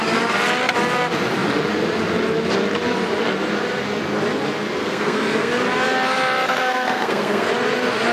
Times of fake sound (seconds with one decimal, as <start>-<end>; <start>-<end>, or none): 4.8-5.5; 6.6-7.5